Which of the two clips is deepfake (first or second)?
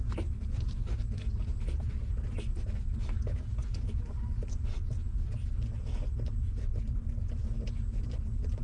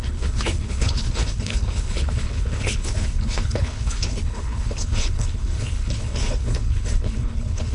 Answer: second